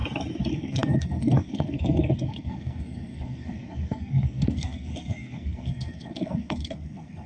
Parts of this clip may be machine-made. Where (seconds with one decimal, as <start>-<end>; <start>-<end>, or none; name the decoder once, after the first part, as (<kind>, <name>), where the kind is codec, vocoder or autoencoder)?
0.5-7.3 (codec, SNAC)